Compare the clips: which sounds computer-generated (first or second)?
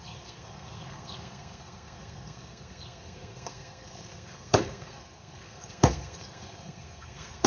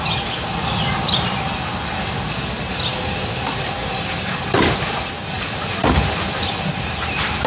first